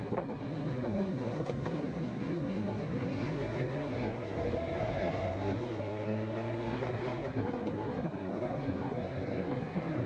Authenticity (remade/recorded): remade